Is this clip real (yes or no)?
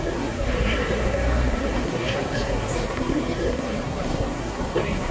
no